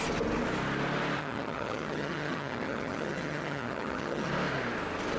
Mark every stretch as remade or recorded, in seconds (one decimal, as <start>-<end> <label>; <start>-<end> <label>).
0.0-1.2 recorded; 1.2-4.3 remade; 4.3-5.2 recorded

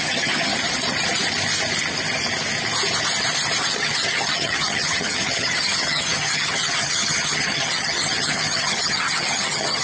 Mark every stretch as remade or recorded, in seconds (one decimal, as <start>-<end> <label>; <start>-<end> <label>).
0.0-0.5 remade; 0.5-3.6 recorded; 3.6-9.8 remade

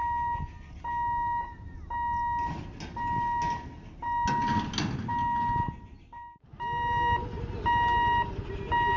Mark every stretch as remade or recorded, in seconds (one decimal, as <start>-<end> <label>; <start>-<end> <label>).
0.0-9.0 recorded

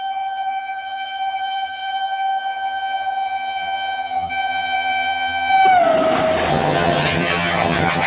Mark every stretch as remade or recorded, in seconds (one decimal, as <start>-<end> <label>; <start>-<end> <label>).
0.0-5.5 remade; 5.5-6.5 recorded; 6.5-8.1 remade

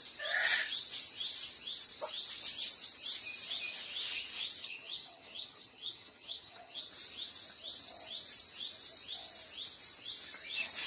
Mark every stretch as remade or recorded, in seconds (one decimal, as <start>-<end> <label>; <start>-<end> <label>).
0.0-4.6 recorded; 4.6-6.9 remade; 6.9-10.9 recorded

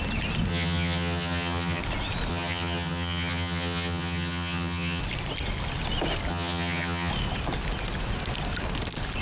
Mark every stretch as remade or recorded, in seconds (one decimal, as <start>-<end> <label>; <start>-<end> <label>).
0.0-0.5 recorded; 0.5-1.8 remade; 1.8-2.3 recorded; 2.3-5.0 remade; 5.0-6.3 recorded; 6.3-7.1 remade; 7.1-9.2 recorded

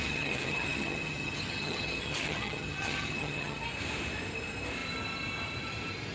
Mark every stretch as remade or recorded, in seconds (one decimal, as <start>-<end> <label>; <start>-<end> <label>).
0.0-3.6 remade; 3.6-6.1 recorded